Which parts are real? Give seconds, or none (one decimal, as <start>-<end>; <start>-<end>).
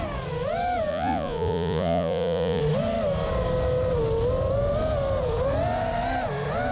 0.0-0.9; 2.6-6.7